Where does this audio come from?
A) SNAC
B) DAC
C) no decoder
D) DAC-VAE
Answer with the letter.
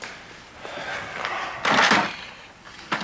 C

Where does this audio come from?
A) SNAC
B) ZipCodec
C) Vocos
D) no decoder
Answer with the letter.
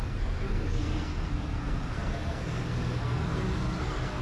A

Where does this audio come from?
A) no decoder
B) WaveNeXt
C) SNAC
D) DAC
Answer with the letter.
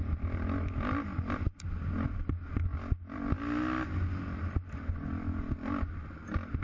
A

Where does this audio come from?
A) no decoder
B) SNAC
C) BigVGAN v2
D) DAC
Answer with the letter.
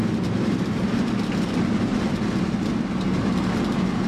A